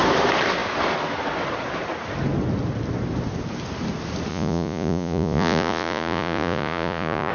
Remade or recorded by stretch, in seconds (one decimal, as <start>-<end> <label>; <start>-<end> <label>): 0.0-4.3 recorded; 4.3-7.3 remade